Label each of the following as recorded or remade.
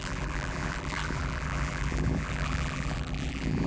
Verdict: remade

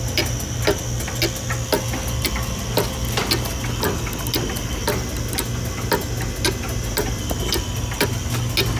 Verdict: recorded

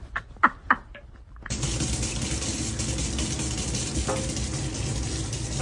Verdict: recorded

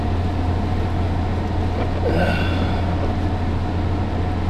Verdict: recorded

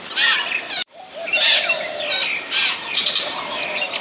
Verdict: remade